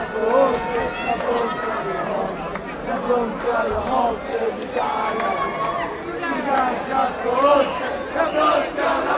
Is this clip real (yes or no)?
yes